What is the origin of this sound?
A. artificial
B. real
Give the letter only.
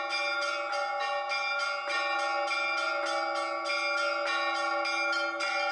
B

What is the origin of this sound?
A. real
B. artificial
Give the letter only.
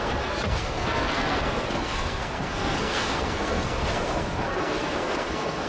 B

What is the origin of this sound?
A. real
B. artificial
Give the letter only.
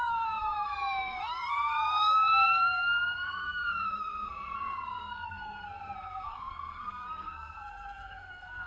B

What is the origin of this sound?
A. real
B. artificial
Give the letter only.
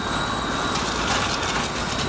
A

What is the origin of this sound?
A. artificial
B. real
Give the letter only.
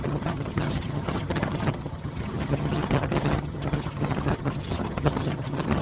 A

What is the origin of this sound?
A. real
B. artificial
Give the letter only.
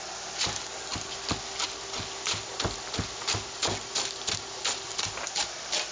A